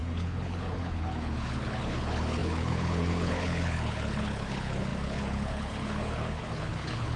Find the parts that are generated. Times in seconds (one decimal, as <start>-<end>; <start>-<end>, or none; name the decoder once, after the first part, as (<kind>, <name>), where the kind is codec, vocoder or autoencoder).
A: 0.0-7.2 (codec, HILCodec)